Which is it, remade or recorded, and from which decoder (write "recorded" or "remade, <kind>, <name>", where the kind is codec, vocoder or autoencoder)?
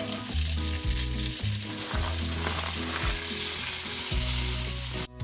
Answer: recorded